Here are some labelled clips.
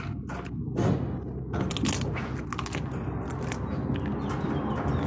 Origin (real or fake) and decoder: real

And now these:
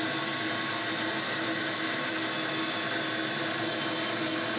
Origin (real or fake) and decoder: real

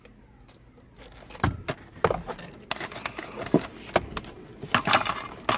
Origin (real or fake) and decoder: real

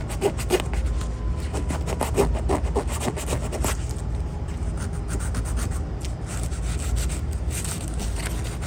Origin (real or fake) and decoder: real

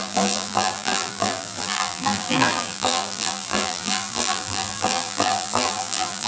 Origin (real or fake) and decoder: fake, vocoder, BigVGAN v2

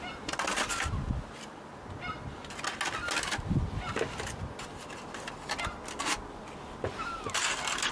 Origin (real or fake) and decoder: real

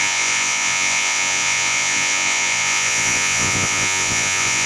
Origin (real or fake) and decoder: fake, vocoder, Vocos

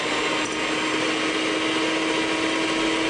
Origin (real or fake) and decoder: real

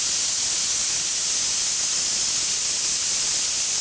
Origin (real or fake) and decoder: real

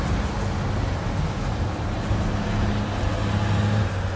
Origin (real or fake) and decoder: real